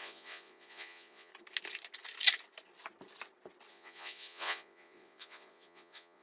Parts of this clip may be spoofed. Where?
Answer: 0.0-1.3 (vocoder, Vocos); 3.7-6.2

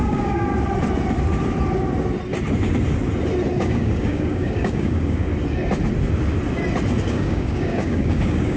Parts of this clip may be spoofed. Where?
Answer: 0.0-0.5 (codec, DAC); 3.6-5.3; 7.1-8.6

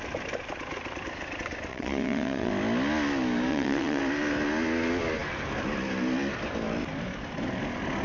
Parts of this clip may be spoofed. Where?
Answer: 1.7-2.5 (vocoder, WaveNeXt); 3.5-4.0